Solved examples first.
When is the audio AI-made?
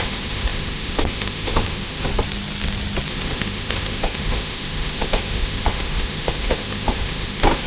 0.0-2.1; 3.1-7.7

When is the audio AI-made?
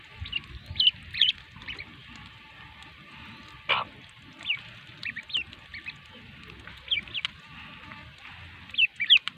none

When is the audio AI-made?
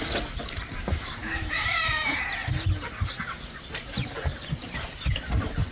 1.2-2.2